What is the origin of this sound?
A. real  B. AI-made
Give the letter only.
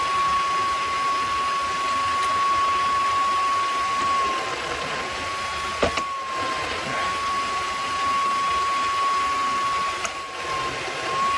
A